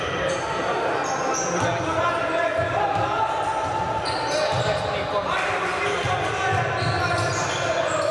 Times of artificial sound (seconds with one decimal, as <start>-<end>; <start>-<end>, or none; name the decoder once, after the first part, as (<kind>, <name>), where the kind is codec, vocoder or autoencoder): none